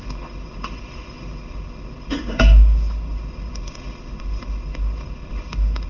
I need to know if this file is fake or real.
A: fake